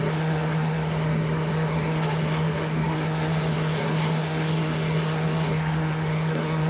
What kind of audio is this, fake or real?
fake